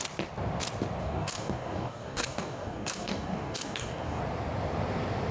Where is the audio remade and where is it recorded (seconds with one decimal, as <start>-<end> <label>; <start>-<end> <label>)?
0.0-1.0 recorded; 1.0-4.2 remade; 4.2-5.3 recorded